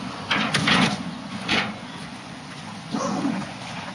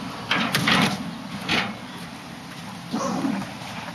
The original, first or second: second